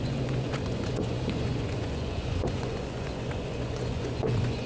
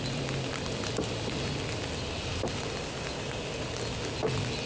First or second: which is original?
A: second